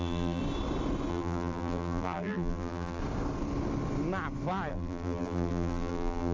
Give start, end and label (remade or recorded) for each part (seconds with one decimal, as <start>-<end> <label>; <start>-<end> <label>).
0.0-0.4 remade; 0.4-1.1 recorded; 1.1-3.0 remade; 3.0-4.7 recorded; 4.7-6.3 remade